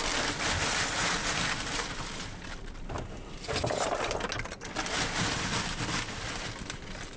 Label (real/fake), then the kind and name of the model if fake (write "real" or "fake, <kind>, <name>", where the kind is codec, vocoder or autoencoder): real